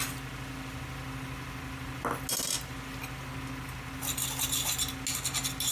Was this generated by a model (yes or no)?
no